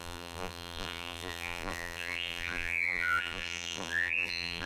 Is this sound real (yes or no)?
no